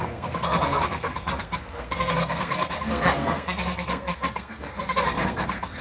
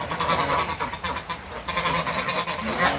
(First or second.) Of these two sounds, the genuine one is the second